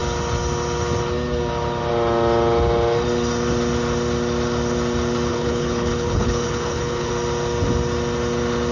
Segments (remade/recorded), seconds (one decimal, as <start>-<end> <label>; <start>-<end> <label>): 0.0-5.3 recorded; 5.3-7.1 remade; 7.1-8.7 recorded